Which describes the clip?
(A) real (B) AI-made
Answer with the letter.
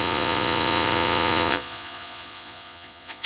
B